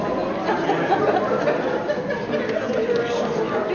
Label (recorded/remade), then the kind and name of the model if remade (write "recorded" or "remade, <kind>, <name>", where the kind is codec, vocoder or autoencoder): recorded